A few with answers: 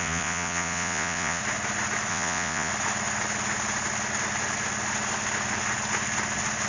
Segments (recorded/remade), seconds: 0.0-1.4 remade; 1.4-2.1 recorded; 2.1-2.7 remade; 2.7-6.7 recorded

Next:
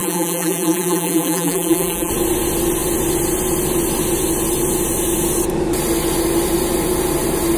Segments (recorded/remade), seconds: 0.0-2.1 remade; 2.1-7.6 recorded

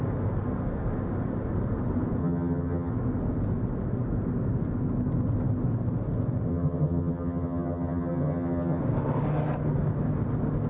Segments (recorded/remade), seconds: 0.0-2.2 recorded; 2.2-2.9 remade; 2.9-6.5 recorded; 6.5-8.8 remade; 8.8-10.7 recorded